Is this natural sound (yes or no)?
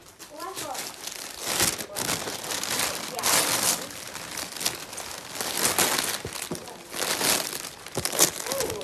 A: yes